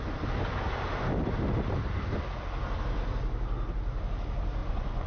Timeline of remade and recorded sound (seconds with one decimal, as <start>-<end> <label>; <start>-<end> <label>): 0.0-4.6 recorded; 4.6-5.1 remade